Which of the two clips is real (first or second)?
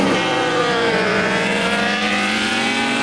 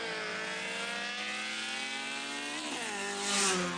second